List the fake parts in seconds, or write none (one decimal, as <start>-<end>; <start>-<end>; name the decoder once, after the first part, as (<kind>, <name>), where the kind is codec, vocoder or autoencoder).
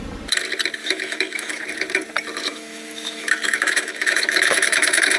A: 0.8-1.6 (autoencoder, DAC-VAE); 2.4-5.2